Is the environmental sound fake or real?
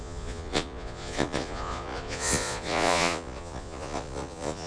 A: fake